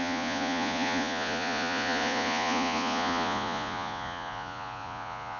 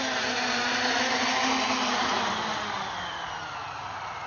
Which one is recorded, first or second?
second